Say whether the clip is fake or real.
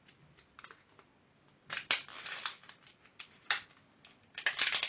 real